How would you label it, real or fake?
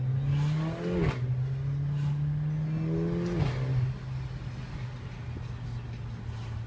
real